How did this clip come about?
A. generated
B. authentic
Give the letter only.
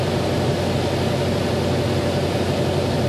B